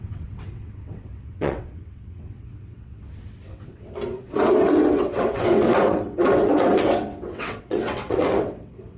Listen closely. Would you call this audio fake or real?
fake